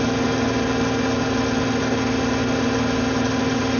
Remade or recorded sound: recorded